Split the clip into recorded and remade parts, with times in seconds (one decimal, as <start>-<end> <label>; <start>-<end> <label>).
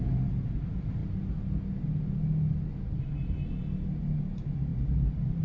0.0-4.7 recorded; 4.7-5.4 remade